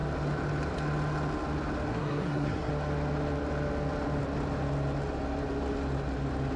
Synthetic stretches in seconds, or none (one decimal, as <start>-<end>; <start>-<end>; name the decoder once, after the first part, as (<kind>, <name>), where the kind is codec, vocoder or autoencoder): 1.9-2.7 (codec, SNAC)